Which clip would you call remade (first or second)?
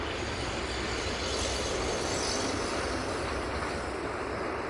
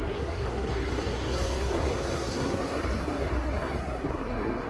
second